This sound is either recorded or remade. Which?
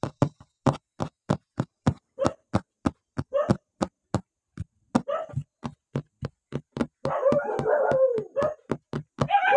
recorded